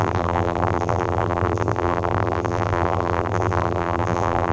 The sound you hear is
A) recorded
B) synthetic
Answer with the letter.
B